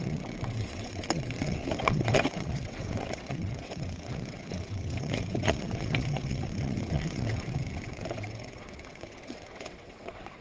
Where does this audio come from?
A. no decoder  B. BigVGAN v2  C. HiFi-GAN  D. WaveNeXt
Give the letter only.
D